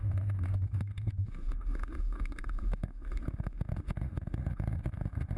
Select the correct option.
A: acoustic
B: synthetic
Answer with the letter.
B